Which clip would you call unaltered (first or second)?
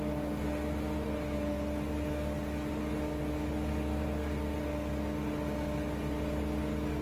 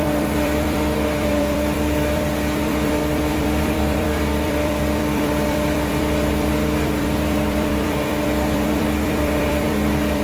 first